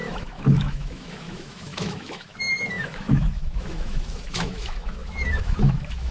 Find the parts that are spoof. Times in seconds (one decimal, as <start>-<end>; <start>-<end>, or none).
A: 0.0-6.1